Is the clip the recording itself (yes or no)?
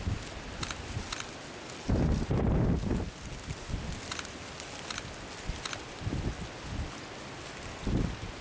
yes